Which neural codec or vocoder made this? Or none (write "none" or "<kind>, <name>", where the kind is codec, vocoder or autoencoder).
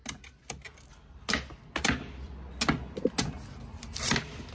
none